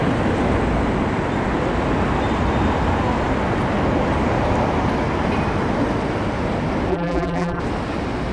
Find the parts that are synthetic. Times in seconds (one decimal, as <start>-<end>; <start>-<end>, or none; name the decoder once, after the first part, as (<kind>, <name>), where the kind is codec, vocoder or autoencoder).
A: 6.9-7.6 (vocoder, BigVGAN v2)